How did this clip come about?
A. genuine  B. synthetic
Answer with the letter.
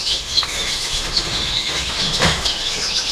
B